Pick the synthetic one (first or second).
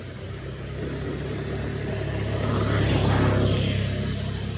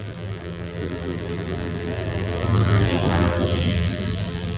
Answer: second